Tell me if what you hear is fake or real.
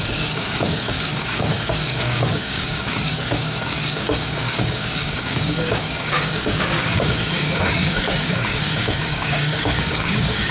fake